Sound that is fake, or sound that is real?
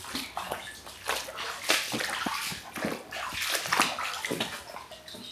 real